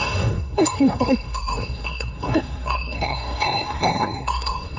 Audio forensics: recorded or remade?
remade